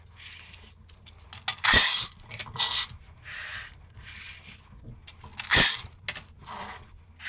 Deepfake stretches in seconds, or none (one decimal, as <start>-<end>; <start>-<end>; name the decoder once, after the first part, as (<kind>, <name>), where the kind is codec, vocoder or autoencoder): 1.8-2.5 (vocoder, BigVGAN v2); 6.4-7.3